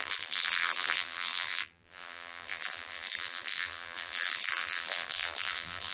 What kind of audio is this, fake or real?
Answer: fake